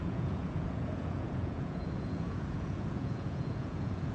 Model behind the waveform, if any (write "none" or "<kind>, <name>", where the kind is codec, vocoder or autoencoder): vocoder, Vocos